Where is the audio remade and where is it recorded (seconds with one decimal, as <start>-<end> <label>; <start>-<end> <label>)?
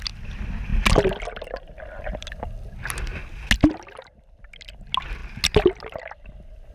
0.0-6.7 recorded